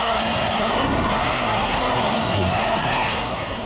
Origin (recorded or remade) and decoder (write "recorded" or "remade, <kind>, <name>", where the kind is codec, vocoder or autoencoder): remade, codec, SNAC